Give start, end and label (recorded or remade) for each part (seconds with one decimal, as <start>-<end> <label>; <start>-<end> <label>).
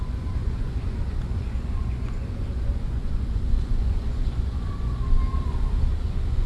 0.0-5.2 remade; 5.2-5.9 recorded; 5.9-6.5 remade